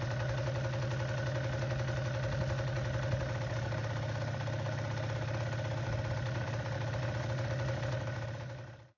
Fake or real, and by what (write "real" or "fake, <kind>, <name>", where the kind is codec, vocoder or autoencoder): real